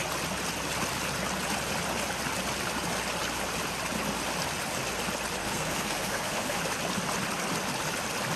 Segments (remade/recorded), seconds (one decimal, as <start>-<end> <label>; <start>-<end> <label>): 0.0-5.4 recorded; 5.4-6.6 remade; 6.6-8.4 recorded